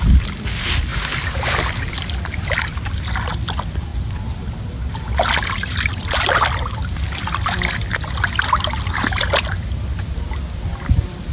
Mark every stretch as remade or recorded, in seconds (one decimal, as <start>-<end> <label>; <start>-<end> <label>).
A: 0.0-11.3 recorded